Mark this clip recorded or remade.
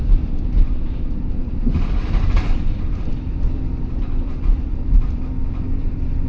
remade